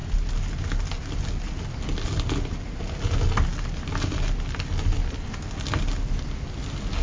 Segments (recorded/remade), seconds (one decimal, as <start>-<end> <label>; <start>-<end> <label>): 0.0-7.0 recorded